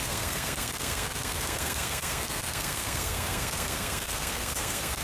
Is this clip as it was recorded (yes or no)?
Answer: no